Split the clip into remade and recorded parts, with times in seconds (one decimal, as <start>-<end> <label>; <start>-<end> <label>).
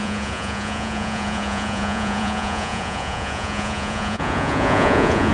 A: 0.0-5.3 remade